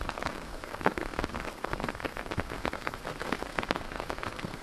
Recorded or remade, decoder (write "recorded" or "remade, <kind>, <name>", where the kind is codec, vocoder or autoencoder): remade, codec, SNAC